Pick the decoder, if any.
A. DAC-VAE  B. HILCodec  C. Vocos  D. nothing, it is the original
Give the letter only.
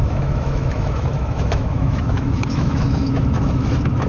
A